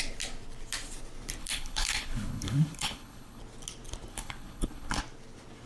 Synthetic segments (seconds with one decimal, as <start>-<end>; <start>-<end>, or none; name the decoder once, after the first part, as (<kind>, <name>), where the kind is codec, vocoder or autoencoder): 1.4-3.4 (codec, HILCodec); 4.1-5.0